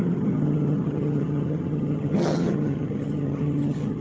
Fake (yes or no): yes